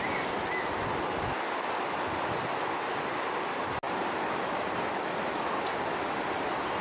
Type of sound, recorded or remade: recorded